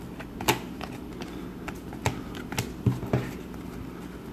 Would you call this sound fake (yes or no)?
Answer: no